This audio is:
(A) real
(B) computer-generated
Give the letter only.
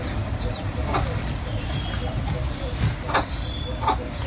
A